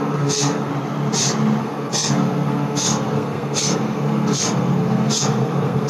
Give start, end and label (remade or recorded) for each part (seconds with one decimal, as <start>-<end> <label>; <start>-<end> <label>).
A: 0.0-0.7 remade; 0.7-1.6 recorded; 1.6-5.9 remade